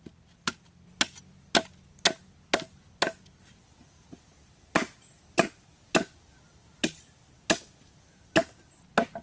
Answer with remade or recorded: recorded